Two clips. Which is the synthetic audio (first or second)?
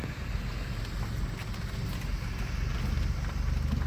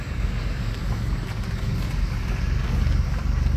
second